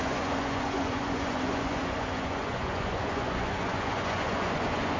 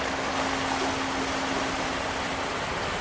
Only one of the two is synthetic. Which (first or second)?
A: first